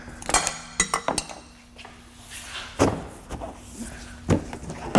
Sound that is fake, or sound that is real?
real